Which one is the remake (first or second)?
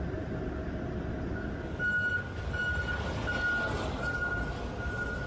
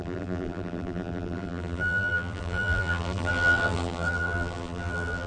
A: second